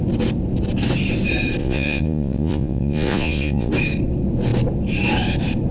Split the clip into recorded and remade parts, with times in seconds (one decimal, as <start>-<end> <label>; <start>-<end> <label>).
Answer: 0.0-1.6 recorded; 1.6-3.7 remade; 3.7-5.7 recorded